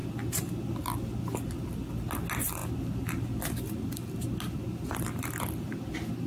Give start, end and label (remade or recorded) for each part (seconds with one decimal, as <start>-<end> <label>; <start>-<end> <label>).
0.0-6.3 recorded